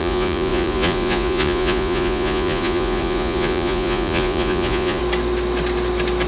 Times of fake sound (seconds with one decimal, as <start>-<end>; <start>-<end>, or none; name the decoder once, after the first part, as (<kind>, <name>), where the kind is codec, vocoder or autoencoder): 0.0-5.0 (vocoder, Vocos)